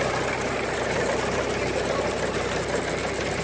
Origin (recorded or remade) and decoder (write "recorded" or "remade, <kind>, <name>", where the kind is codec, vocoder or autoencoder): recorded